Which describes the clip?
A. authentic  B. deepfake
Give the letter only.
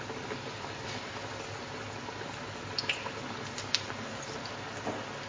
A